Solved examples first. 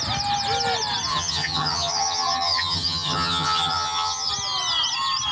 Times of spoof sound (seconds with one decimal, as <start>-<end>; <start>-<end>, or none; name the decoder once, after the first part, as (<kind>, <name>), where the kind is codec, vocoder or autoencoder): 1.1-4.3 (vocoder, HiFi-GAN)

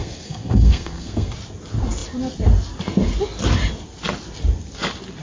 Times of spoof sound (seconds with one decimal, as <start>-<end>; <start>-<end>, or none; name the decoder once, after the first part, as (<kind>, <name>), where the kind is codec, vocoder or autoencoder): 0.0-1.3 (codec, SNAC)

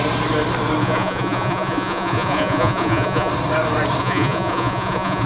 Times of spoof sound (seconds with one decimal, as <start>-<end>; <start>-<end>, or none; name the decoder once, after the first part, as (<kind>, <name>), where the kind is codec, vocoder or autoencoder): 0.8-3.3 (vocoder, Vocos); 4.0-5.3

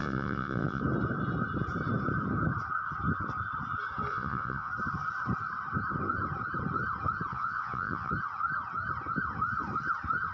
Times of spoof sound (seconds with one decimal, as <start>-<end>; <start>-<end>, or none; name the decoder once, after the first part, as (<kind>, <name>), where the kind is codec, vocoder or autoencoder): 0.0-0.8 (vocoder, Vocos); 4.1-4.7; 7.3-8.1